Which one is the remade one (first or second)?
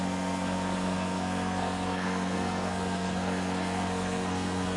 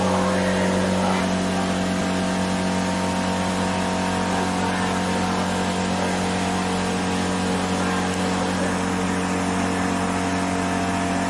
first